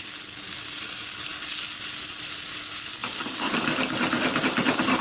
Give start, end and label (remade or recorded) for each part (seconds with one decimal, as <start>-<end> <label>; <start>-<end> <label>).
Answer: 0.0-5.0 recorded